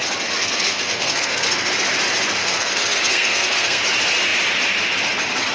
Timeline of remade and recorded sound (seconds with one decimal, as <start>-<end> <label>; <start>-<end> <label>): 0.0-0.4 recorded; 0.4-1.7 remade; 1.7-2.4 recorded; 2.4-3.8 remade; 3.8-5.5 recorded